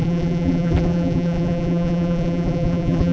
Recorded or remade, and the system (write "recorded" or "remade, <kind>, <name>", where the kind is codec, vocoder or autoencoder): remade, vocoder, BigVGAN v2